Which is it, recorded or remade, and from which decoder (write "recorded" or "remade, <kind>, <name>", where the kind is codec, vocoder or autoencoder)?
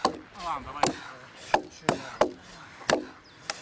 recorded